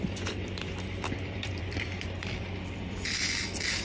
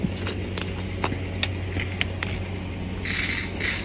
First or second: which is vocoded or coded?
first